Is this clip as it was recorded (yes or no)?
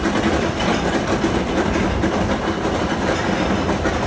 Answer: yes